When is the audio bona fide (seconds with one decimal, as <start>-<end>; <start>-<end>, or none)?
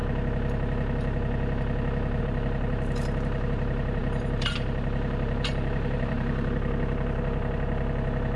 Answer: 0.0-2.2